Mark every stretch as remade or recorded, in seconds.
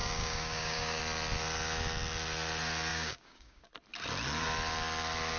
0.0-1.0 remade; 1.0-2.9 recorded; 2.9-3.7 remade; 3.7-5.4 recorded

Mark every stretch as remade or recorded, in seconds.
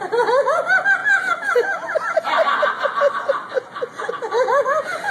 0.0-5.1 recorded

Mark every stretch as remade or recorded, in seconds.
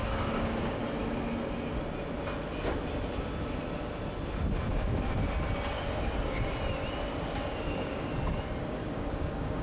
0.0-0.8 remade; 0.8-4.7 recorded; 4.7-5.2 remade; 5.2-7.2 recorded; 7.2-8.1 remade; 8.1-8.6 recorded; 8.6-9.6 remade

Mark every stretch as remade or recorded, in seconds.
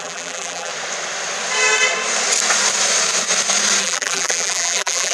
0.0-0.7 remade; 0.7-3.8 recorded; 3.8-5.1 remade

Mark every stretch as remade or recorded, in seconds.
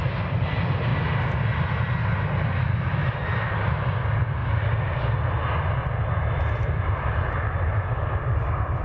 0.0-5.8 recorded; 5.8-7.1 remade; 7.1-8.8 recorded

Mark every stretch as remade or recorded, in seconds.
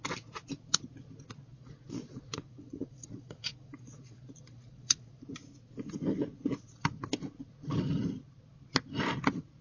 0.0-1.5 recorded; 1.5-5.2 remade; 5.2-9.6 recorded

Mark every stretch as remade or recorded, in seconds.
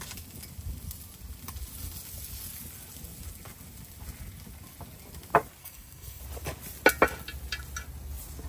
0.0-5.6 recorded; 5.6-6.2 remade; 6.2-8.5 recorded